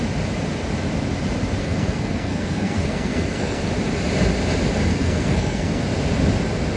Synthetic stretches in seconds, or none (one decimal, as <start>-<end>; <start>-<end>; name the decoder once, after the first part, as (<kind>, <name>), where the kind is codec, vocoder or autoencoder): 1.6-3.7 (codec, SNAC); 4.9-5.8